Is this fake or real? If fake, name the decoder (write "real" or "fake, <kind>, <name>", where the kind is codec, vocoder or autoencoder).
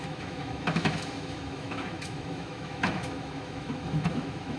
fake, autoencoder, DAC-VAE